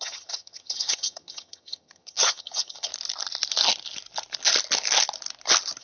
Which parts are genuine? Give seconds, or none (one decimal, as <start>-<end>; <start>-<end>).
2.9-5.8